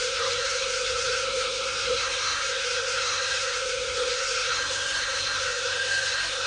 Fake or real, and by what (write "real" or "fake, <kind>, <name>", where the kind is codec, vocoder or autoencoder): fake, codec, SNAC